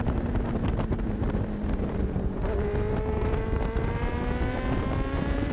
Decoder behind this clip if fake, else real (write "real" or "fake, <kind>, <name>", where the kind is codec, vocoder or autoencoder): fake, vocoder, BigVGAN v2